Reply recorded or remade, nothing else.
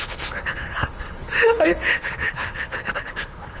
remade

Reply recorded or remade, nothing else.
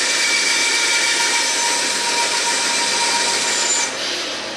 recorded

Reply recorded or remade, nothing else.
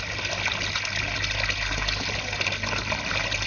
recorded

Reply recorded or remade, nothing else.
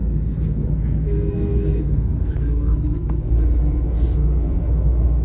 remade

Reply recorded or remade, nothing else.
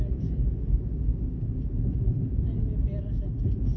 recorded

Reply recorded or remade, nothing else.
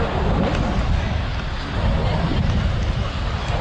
recorded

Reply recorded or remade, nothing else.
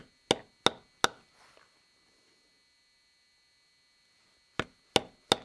recorded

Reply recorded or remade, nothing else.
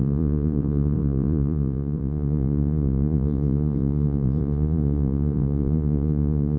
remade